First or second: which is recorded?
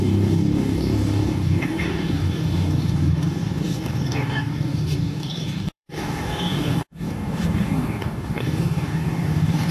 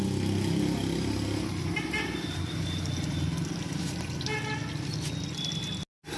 second